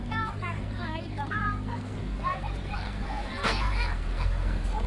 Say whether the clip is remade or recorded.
remade